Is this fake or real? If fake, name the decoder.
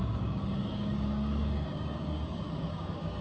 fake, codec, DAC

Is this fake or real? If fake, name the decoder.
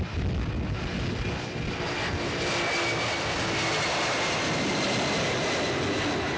real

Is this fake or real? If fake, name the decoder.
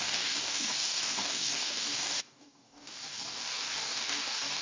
fake, codec, DAC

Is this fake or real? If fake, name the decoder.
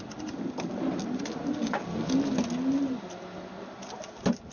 real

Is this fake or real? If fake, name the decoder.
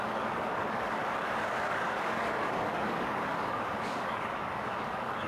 fake, codec, DAC